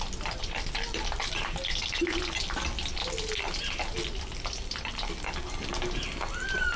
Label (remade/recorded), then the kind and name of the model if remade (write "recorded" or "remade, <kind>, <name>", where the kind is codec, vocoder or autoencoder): recorded